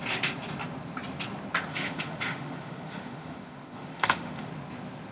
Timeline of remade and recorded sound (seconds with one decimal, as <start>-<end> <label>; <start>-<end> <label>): 0.0-1.7 recorded; 1.7-4.5 remade; 4.5-5.1 recorded